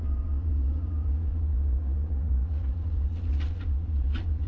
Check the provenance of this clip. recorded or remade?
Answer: remade